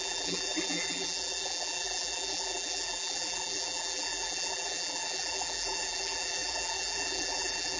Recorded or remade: remade